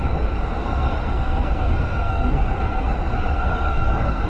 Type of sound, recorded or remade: remade